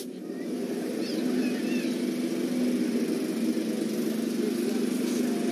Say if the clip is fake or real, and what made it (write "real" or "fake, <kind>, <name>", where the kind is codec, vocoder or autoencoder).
real